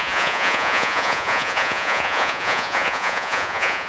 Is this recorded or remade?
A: remade